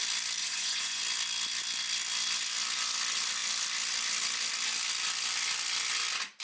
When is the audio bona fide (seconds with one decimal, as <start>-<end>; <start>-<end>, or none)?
0.0-0.4; 1.0-6.4